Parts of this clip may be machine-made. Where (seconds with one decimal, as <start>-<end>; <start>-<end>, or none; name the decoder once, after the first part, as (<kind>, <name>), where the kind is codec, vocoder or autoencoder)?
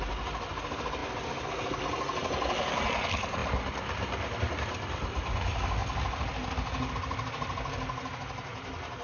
none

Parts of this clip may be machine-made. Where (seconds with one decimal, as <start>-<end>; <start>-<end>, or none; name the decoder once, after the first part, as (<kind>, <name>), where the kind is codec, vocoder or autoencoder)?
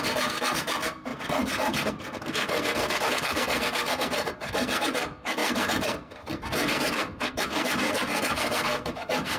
0.0-9.4 (codec, SNAC)